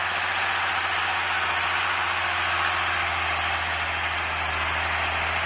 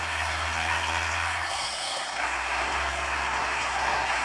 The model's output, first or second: second